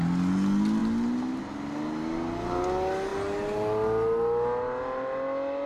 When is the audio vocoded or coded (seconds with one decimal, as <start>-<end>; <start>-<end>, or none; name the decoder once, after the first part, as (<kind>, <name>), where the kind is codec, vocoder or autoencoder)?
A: none